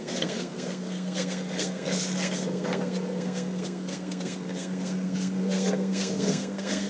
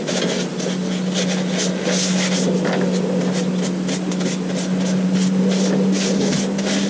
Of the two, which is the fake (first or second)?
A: first